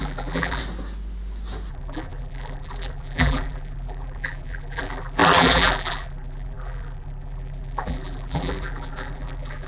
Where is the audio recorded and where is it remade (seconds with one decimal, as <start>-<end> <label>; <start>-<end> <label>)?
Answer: 0.0-0.6 remade; 0.6-1.7 recorded; 1.7-9.7 remade